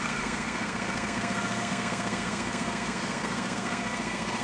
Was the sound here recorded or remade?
remade